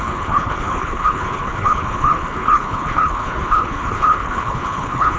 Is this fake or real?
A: fake